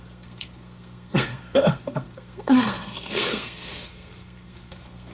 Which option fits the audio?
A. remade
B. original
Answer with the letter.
A